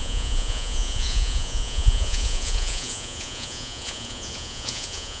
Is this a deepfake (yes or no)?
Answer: yes